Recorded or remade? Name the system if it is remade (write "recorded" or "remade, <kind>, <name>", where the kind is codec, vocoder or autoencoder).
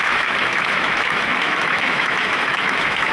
remade, autoencoder, DAC-VAE